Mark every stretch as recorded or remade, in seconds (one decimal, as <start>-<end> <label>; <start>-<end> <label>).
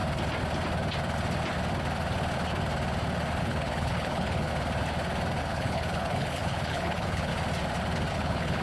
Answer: 0.0-3.4 recorded; 3.4-4.5 remade; 4.5-5.4 recorded; 5.4-7.3 remade; 7.3-8.1 recorded; 8.1-8.6 remade